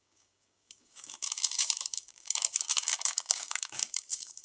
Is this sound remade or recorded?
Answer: remade